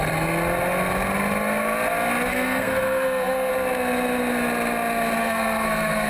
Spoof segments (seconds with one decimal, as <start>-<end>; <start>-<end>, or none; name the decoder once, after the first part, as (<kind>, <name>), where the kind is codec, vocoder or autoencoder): 2.3-3.5 (codec, SNAC); 5.2-6.1